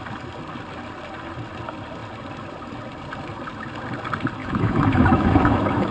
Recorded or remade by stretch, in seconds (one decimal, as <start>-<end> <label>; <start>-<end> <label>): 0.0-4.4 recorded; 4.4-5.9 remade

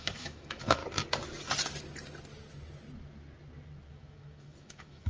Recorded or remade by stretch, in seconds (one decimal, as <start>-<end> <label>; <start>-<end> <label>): 0.0-0.8 remade; 0.8-3.9 recorded; 3.9-5.1 remade

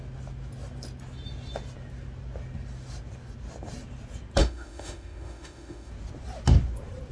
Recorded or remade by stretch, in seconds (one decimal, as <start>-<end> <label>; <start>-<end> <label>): 0.0-4.4 recorded; 4.4-5.9 remade; 5.9-7.1 recorded

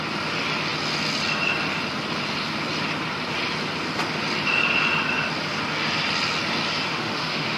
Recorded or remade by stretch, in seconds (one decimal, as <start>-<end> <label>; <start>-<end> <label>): 0.0-6.9 recorded; 6.9-7.6 remade

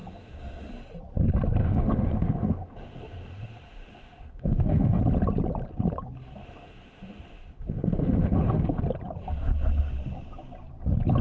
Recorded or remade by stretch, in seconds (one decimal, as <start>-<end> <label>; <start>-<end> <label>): 0.0-0.7 remade; 0.7-1.6 recorded; 1.6-5.0 remade; 5.0-6.4 recorded; 6.4-8.8 remade; 8.8-11.2 recorded